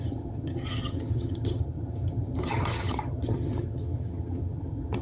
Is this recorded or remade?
remade